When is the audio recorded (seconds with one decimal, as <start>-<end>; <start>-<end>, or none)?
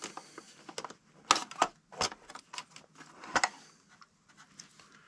0.0-5.1